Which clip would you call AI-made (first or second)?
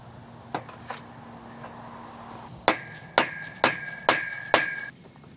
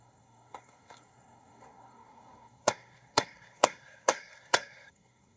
second